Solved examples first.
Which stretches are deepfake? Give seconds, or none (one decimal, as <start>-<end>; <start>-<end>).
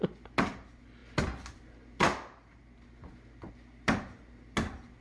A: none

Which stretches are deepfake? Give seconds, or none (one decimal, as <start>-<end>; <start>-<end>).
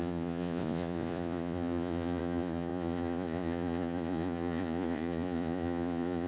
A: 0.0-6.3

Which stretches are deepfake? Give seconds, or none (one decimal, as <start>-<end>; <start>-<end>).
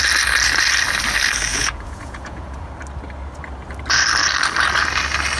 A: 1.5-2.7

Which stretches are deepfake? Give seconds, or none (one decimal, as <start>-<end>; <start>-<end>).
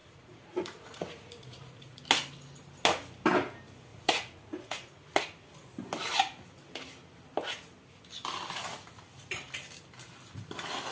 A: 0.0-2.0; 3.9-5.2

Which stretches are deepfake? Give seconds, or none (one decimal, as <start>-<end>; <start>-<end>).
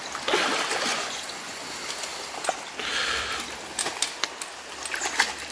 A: 0.9-1.6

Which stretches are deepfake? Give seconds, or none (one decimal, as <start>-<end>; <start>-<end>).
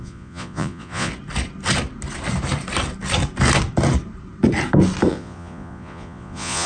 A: 0.0-1.1; 5.1-6.7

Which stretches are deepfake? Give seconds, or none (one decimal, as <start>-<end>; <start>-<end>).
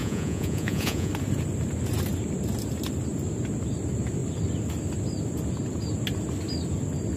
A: 0.0-1.1